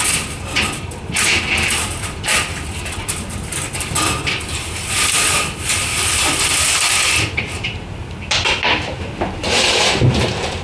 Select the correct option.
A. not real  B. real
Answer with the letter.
A